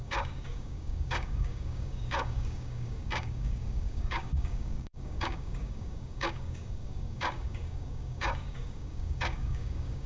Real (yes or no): no